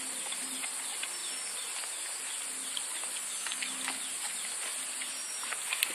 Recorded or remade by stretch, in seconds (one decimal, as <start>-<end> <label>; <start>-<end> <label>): 0.0-5.9 recorded